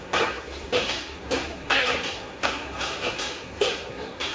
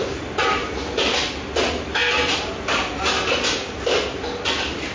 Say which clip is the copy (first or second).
first